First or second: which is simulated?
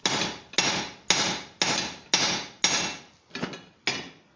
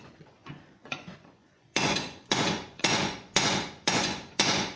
second